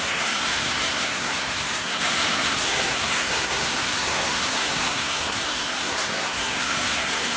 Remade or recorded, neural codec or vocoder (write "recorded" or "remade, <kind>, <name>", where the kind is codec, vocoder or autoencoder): remade, codec, SNAC